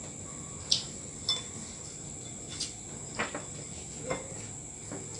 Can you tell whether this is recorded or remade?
recorded